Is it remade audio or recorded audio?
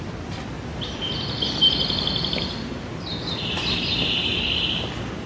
recorded